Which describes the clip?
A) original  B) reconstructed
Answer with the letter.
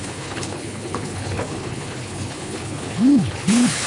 B